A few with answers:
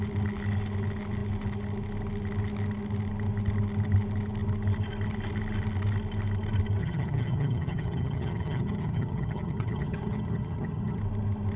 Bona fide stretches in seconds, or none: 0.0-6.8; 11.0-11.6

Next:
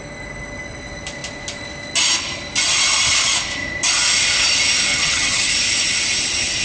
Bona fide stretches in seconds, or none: 0.0-4.9; 5.5-6.6

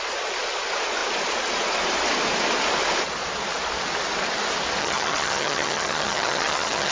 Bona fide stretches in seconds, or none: 0.0-4.8

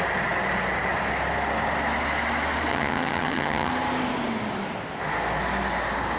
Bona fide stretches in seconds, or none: 0.0-2.7; 3.7-6.2

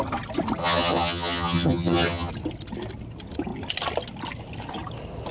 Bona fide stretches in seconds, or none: 0.0-0.6; 2.3-5.3

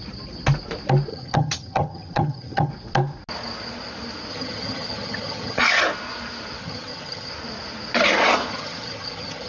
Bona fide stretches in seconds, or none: 0.0-1.1; 2.7-4.3; 5.6-6.6; 7.3-8.5

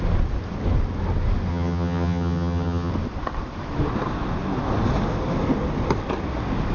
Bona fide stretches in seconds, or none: 0.0-1.5; 2.9-6.7

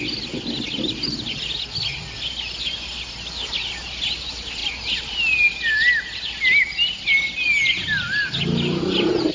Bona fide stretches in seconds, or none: 0.0-9.3